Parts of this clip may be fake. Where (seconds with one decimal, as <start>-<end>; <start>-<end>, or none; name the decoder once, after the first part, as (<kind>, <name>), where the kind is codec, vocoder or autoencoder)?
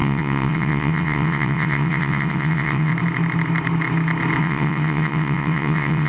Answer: 0.0-2.9 (vocoder, WaveNeXt); 4.4-6.1